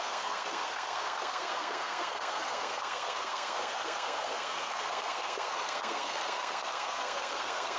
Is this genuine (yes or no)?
no